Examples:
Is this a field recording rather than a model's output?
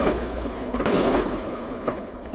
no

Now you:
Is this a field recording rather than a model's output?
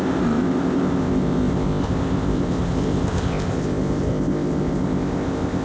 no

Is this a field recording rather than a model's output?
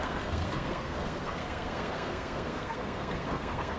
no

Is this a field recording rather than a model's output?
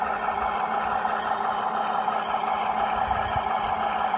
yes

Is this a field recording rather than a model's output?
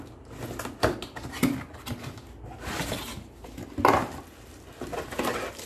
yes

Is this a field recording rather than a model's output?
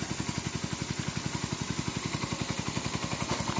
yes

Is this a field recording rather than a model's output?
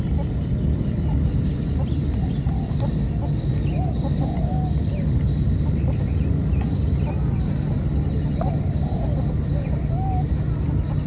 yes